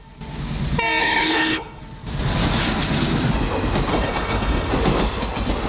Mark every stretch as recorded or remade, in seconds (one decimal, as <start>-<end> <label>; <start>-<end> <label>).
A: 0.0-1.0 recorded; 1.0-1.8 remade; 1.8-3.9 recorded; 3.9-4.7 remade; 4.7-5.7 recorded